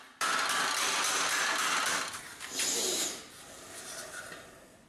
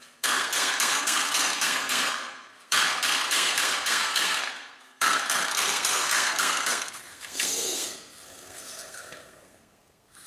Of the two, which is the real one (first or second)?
first